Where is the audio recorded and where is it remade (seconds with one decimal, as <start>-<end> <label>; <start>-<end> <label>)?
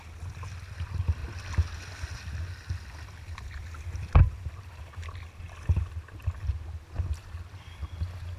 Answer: 0.0-8.4 recorded